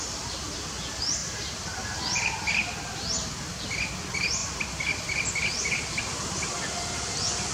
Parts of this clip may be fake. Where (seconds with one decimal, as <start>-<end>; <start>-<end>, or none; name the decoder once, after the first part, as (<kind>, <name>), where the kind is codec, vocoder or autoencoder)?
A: 1.2-3.0 (vocoder, BigVGAN v2); 4.4-5.3